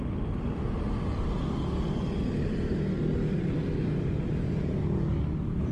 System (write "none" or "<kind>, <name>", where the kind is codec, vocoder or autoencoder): none